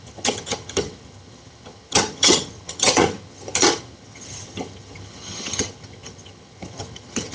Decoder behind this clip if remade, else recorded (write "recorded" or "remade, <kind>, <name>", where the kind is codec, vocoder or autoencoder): remade, vocoder, HiFi-GAN